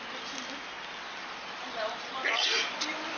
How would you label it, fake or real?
real